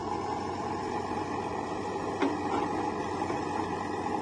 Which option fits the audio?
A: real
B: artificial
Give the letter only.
A